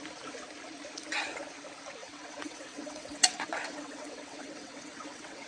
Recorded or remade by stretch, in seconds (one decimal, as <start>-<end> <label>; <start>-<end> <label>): 0.0-2.0 recorded; 2.0-5.5 remade